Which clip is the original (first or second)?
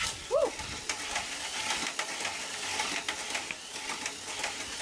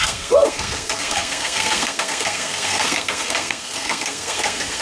first